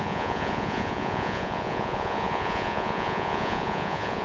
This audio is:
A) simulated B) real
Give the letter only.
A